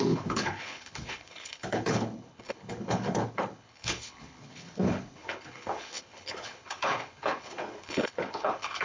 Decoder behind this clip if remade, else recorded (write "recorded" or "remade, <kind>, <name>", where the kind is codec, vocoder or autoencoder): remade, codec, HILCodec